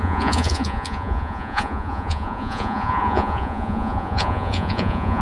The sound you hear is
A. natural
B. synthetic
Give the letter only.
B